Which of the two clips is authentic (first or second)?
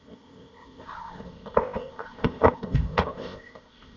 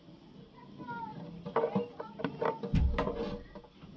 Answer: second